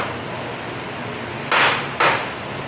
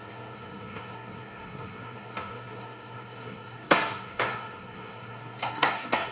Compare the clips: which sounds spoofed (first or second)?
second